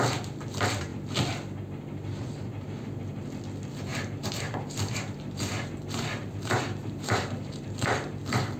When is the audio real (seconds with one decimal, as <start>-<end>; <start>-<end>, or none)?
0.0-3.9; 8.2-8.6